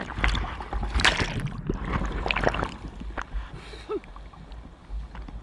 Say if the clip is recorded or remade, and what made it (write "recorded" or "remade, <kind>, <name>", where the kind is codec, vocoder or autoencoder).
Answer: recorded